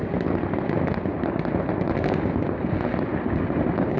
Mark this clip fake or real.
real